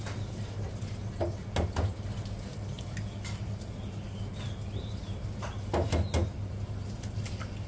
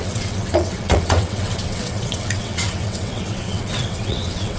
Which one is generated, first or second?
second